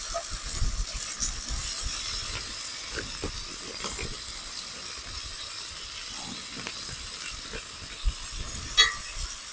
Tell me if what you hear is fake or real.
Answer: real